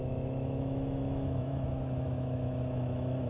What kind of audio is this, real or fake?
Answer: fake